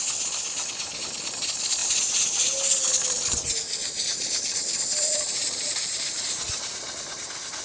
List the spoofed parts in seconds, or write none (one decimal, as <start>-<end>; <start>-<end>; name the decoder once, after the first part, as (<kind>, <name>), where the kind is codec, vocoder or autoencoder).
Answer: 3.8-7.1 (vocoder, BigVGAN v2)